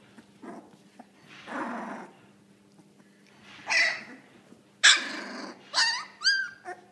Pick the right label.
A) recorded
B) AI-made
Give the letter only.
A